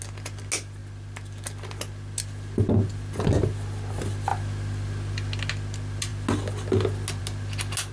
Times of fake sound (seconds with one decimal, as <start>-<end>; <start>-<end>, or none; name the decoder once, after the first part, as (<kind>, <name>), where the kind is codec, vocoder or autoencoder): none